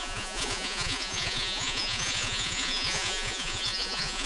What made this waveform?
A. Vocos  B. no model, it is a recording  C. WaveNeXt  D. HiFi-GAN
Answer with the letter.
A